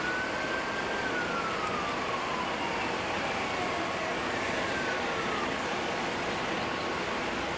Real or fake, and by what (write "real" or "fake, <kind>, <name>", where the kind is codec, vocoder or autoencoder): real